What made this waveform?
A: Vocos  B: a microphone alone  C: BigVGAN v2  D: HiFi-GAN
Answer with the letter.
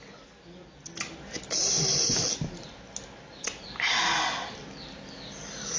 B